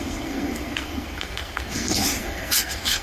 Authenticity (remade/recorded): remade